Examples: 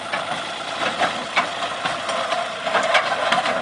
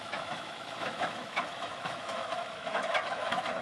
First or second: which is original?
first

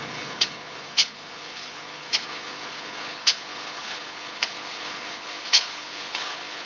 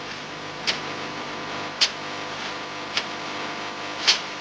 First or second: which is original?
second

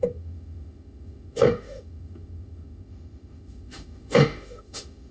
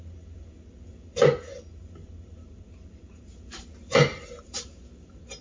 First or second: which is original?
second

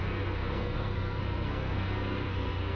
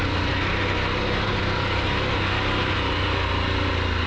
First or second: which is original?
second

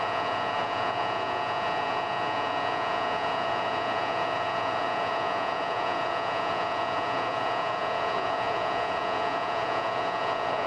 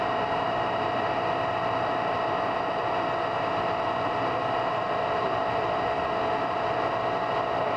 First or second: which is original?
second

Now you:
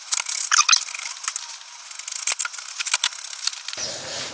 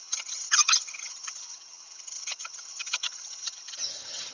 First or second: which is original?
first